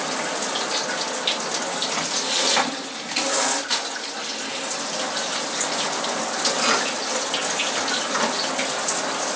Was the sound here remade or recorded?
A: recorded